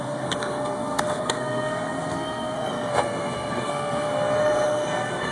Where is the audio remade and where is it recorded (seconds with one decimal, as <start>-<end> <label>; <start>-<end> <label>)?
0.0-5.3 remade